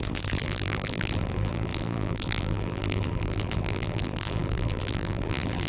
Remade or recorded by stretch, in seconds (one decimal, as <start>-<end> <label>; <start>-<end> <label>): 0.0-5.7 remade